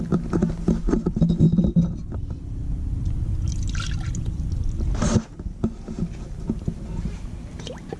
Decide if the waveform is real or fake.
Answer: real